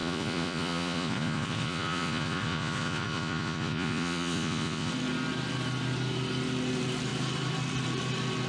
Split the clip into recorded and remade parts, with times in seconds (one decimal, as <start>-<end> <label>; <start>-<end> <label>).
0.0-4.9 remade; 4.9-8.5 recorded